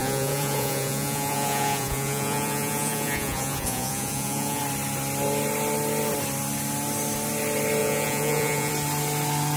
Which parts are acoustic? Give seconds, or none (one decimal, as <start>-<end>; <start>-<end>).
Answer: 4.6-7.8; 8.7-9.6